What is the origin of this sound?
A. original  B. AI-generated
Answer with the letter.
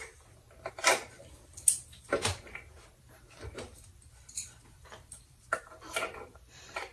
B